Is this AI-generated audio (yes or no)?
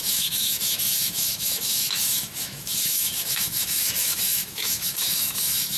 yes